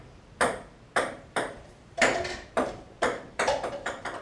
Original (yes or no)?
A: no